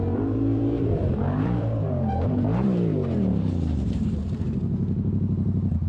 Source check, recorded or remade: remade